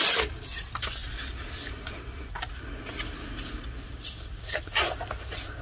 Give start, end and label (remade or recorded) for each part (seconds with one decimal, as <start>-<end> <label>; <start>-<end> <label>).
0.0-5.6 recorded